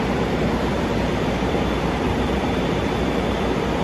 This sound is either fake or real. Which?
fake